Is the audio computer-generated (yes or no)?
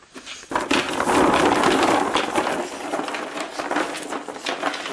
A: no